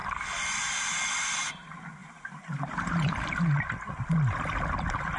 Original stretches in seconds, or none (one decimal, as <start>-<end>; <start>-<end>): 0.0-2.0; 3.8-5.2